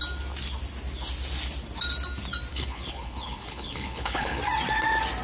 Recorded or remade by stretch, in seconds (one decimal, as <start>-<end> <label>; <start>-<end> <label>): 0.0-2.5 recorded; 2.5-4.4 remade; 4.4-5.2 recorded